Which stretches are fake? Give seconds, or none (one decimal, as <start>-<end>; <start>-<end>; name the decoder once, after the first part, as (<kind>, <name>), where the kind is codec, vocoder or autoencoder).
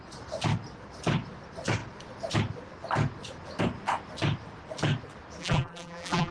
5.4-6.3 (vocoder, BigVGAN v2)